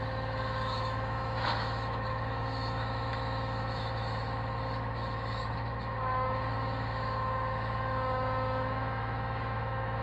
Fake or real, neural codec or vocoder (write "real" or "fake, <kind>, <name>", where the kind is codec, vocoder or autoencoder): fake, autoencoder, DAC-VAE